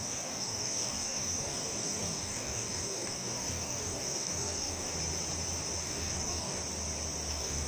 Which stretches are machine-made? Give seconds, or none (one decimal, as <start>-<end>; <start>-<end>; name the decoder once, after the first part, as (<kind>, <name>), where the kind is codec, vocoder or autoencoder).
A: 0.0-4.9 (codec, DAC); 5.8-6.6; 7.3-7.7